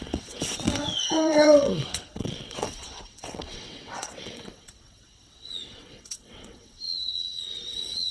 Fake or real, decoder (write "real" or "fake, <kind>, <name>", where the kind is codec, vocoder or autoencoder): fake, vocoder, WaveNeXt